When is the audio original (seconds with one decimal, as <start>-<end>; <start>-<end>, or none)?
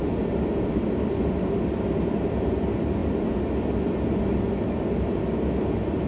0.0-6.1